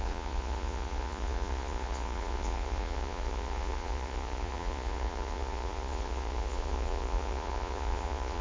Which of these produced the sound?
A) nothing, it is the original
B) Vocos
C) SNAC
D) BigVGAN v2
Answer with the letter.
B